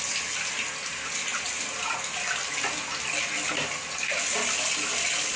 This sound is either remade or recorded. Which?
recorded